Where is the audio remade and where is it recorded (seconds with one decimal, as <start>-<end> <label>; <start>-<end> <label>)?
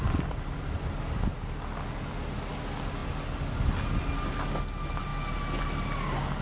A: 0.0-6.4 recorded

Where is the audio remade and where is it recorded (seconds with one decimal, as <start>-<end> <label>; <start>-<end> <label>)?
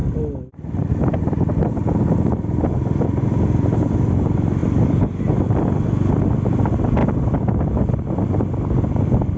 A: 0.0-9.4 recorded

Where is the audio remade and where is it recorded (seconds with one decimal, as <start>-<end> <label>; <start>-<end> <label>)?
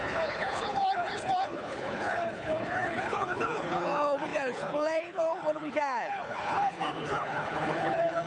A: 0.0-8.3 remade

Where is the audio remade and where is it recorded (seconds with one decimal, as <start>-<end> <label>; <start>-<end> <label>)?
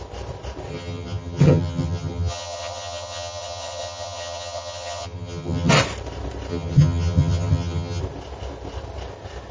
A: 0.0-0.7 recorded; 0.7-5.7 remade; 5.7-6.5 recorded; 6.5-8.0 remade; 8.0-9.5 recorded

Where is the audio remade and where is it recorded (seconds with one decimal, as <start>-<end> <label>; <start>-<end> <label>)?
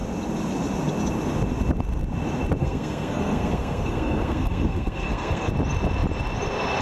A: 0.0-2.6 recorded; 2.6-5.5 remade; 5.5-6.8 recorded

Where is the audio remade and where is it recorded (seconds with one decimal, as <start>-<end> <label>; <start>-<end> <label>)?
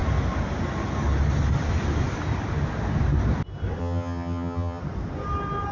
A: 0.0-3.8 recorded; 3.8-4.8 remade; 4.8-5.7 recorded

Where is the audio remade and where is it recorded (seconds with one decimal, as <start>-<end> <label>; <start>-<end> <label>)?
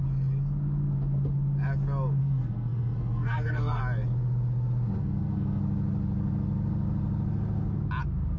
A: 0.0-2.2 recorded; 2.2-3.8 remade; 3.8-5.0 recorded; 5.0-5.6 remade; 5.6-8.4 recorded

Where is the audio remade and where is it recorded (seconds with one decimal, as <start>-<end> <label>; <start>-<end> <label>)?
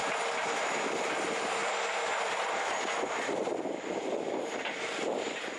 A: 0.0-1.1 recorded; 1.1-5.6 remade